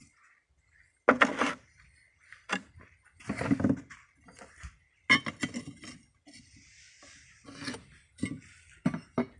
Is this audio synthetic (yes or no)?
no